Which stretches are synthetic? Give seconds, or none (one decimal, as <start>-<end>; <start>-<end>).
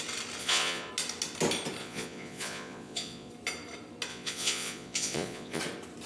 0.4-0.9; 1.8-3.3; 4.1-5.6